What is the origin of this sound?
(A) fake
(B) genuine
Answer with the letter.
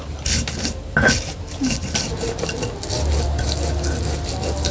B